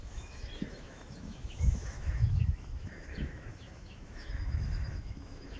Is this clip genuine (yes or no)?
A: no